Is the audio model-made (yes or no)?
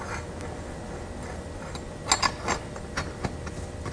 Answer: no